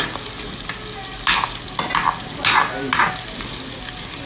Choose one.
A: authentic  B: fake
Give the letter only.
A